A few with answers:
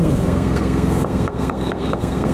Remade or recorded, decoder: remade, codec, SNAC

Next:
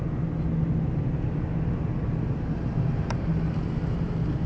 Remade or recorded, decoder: recorded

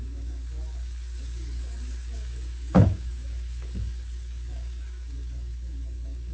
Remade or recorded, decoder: remade, codec, DAC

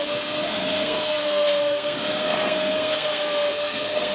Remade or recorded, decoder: remade, codec, SNAC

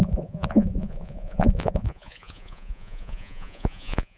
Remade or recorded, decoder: remade, vocoder, Vocos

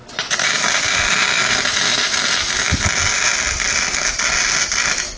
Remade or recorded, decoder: recorded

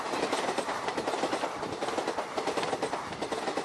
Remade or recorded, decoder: recorded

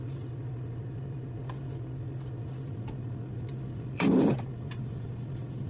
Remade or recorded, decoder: remade, vocoder, BigVGAN v2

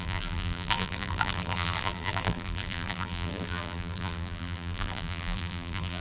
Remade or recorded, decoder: remade, vocoder, BigVGAN v2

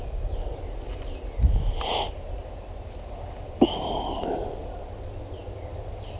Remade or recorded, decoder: recorded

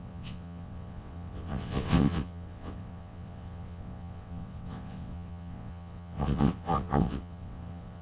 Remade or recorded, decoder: remade, vocoder, WaveNeXt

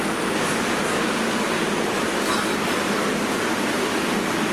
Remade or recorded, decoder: recorded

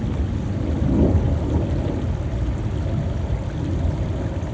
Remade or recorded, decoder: recorded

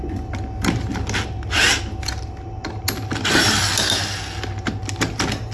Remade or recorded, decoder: recorded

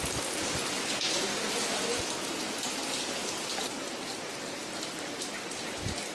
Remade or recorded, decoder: recorded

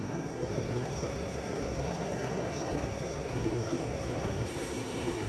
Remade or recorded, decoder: remade, codec, SNAC